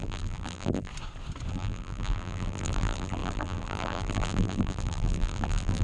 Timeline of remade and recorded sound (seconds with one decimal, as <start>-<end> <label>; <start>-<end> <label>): 0.0-0.9 remade; 0.9-1.5 recorded; 1.5-5.8 remade